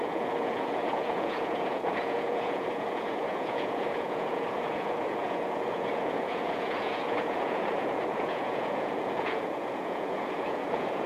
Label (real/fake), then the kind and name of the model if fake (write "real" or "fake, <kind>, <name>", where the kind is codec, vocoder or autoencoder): fake, vocoder, Vocos